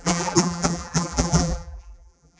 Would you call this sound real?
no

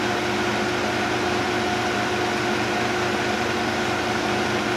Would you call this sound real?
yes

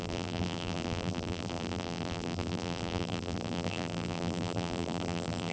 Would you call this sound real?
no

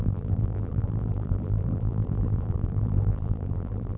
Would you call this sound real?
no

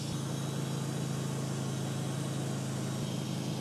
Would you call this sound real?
yes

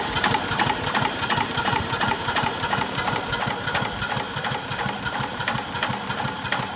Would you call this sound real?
no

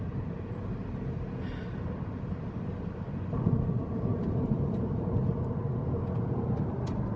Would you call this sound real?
yes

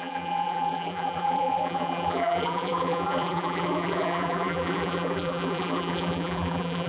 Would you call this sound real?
no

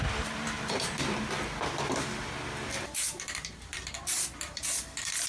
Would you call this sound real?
no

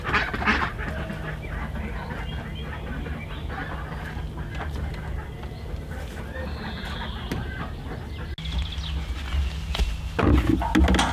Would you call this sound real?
yes